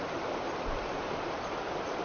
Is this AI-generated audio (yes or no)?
no